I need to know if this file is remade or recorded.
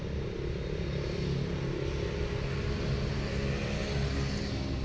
recorded